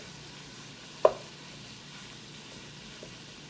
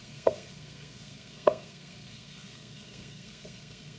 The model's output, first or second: second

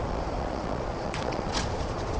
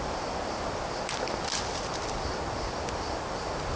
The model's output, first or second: first